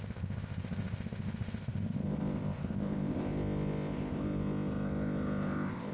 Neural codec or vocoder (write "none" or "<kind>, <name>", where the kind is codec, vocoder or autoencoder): codec, ZipCodec